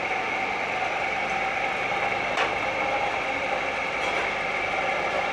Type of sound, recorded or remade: recorded